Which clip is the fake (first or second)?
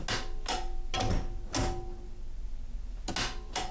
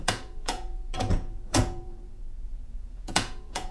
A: second